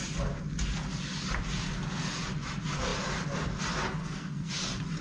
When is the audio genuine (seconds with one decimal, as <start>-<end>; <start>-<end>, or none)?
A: 0.0-4.0; 4.5-5.0